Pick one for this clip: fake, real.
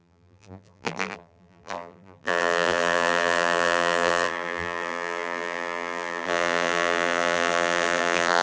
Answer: fake